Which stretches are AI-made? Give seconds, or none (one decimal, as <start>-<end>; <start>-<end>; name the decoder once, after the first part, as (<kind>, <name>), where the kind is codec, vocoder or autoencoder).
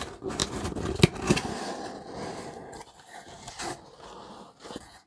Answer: none